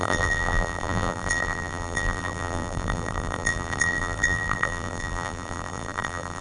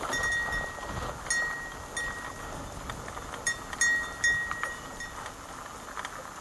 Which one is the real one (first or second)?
second